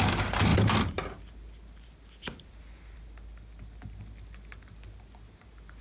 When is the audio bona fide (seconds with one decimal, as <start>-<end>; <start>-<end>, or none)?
0.0-5.8